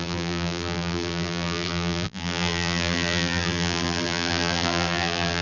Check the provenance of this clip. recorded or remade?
remade